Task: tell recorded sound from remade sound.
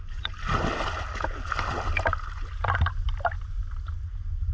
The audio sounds recorded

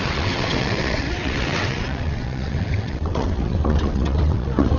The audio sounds remade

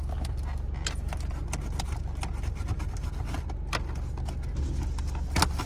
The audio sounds recorded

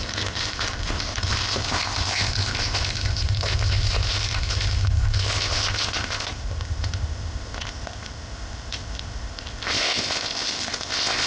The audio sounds remade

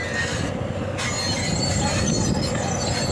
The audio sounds recorded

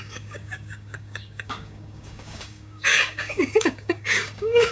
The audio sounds remade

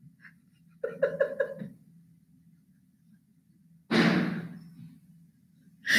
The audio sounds recorded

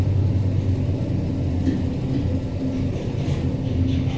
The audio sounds recorded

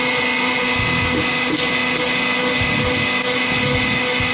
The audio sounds recorded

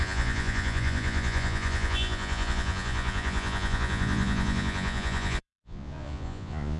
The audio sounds remade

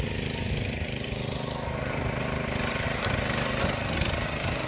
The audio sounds recorded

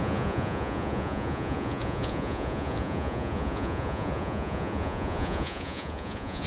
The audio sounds remade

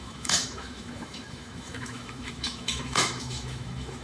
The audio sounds remade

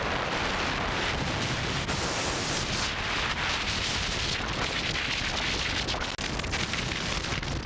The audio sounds recorded